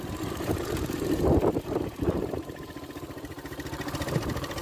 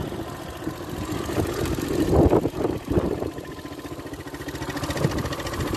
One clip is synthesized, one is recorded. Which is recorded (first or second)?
second